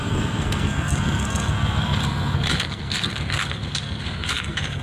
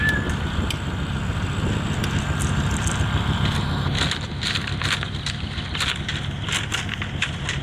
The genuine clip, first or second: second